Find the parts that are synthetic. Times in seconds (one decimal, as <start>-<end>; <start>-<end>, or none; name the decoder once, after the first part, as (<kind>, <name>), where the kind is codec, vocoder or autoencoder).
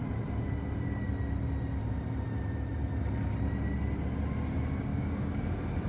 4.9-5.5 (codec, DAC)